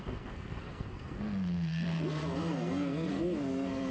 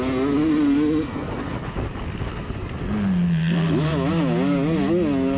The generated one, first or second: first